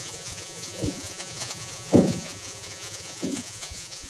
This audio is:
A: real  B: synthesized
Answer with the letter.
B